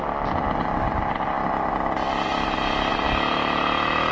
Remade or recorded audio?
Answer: recorded